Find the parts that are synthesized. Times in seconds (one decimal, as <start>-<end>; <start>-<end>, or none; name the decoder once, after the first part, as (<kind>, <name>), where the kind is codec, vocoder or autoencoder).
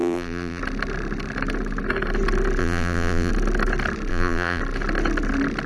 0.0-0.6 (vocoder, BigVGAN v2); 2.6-3.3; 4.1-4.6